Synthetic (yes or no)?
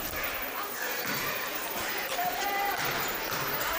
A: yes